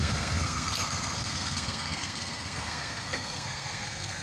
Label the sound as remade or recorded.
remade